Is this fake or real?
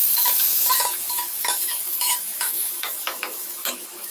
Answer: fake